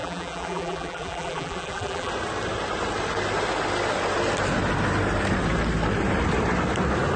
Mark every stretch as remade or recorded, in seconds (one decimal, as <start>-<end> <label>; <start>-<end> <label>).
0.0-2.1 remade; 2.1-7.2 recorded

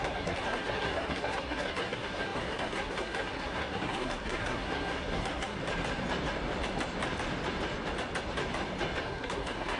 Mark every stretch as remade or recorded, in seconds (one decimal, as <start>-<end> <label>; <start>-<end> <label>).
0.0-5.6 remade; 5.6-9.0 recorded; 9.0-9.8 remade

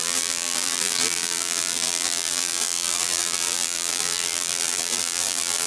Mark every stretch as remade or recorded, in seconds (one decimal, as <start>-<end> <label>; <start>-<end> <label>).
0.0-5.7 remade

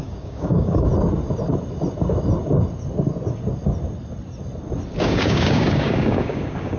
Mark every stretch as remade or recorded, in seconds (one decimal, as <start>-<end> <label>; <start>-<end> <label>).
0.0-0.9 remade; 0.9-5.0 recorded; 5.0-6.8 remade

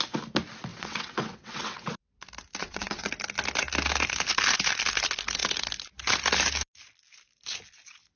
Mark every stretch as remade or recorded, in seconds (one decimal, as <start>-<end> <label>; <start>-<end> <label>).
0.0-0.7 recorded; 0.7-2.1 remade; 2.1-2.6 recorded; 2.6-3.1 remade; 3.1-8.2 recorded

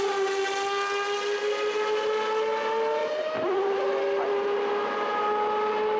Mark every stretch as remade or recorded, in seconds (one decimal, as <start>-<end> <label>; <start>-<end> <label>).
0.0-3.0 recorded; 3.0-4.3 remade; 4.3-6.0 recorded

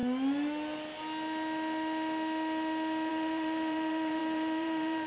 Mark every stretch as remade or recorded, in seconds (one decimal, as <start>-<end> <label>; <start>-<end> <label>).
0.0-3.1 recorded; 3.1-5.1 remade

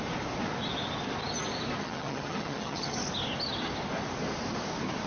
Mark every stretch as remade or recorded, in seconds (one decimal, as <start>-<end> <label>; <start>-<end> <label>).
0.0-1.8 recorded; 1.8-3.0 remade; 3.0-5.1 recorded